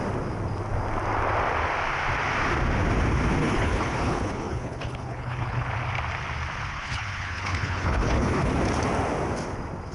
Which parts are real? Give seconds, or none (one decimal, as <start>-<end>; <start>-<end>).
0.0-3.4; 5.7-6.7; 8.5-9.9